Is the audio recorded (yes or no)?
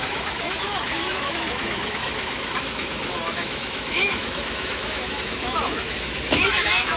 no